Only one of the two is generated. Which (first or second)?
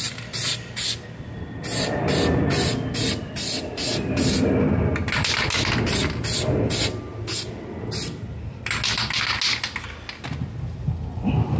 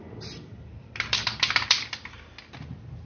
second